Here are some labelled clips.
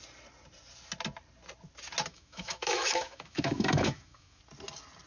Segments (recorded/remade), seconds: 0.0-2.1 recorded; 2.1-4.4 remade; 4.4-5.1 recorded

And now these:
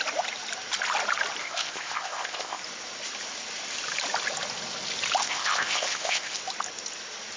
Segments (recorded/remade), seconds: 0.0-1.4 recorded; 1.4-2.6 remade; 2.6-5.2 recorded; 5.2-6.4 remade; 6.4-7.4 recorded

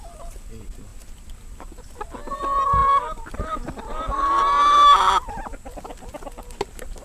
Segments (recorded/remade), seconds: 0.0-7.0 recorded

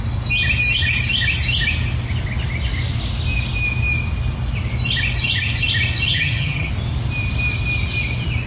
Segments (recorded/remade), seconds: 0.0-6.1 recorded; 6.1-6.7 remade; 6.7-8.5 recorded

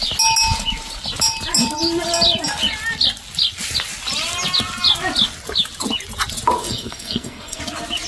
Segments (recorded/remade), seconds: 0.0-6.6 recorded; 6.6-7.6 remade; 7.6-8.1 recorded